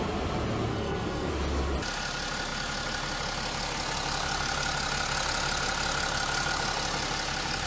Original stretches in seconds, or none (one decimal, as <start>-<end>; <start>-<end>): 0.0-0.7; 1.3-7.7